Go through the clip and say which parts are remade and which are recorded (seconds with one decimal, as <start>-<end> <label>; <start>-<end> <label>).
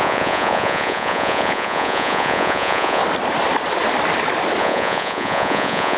0.0-3.0 remade; 3.0-4.6 recorded; 4.6-6.0 remade